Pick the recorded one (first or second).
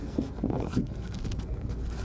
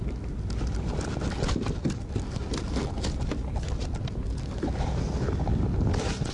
second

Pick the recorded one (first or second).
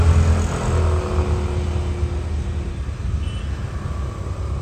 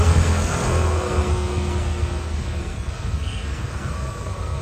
first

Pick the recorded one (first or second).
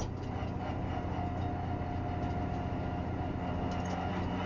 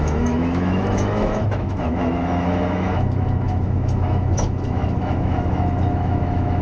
first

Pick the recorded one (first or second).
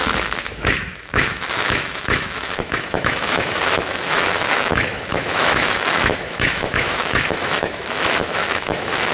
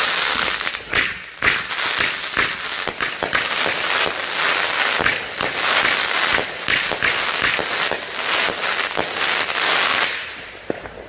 second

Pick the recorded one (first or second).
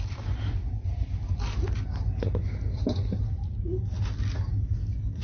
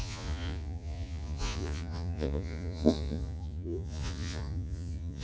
first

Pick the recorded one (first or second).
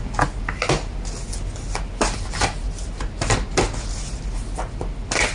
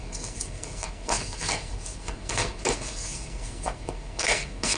first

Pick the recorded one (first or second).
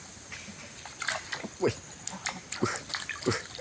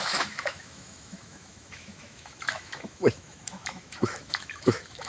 first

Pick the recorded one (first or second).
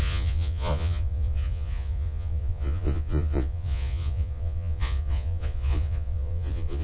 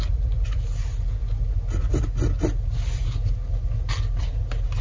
second